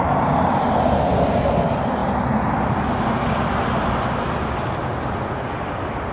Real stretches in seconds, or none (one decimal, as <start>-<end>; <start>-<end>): 0.0-6.1